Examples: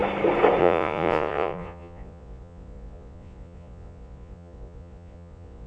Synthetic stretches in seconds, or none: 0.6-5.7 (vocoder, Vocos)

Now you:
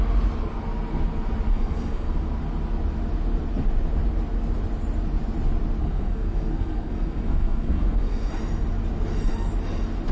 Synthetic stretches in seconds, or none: 1.5-2.1 (codec, SNAC); 5.8-8.3

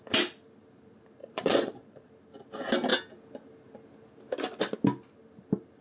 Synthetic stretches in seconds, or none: 1.2-2.1 (vocoder, Vocos)

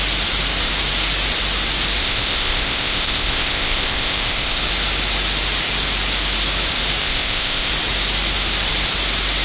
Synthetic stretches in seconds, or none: 2.0-4.6 (codec, ZipCodec); 7.0-7.7

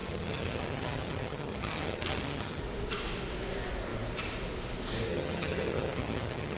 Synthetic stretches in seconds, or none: 0.0-2.6 (vocoder, HiFi-GAN); 5.1-6.6

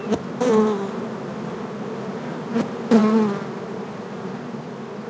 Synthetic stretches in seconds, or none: none